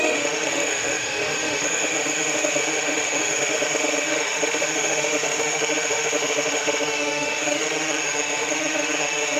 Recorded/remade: remade